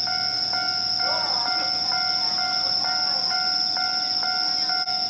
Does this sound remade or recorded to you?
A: recorded